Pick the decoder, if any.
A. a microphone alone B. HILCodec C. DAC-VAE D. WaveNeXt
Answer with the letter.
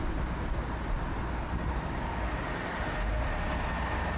A